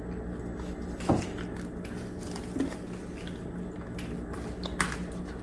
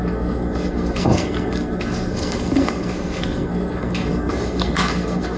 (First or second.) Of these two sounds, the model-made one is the second